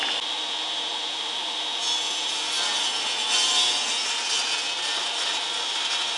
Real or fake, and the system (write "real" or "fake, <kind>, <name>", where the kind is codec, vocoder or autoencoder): real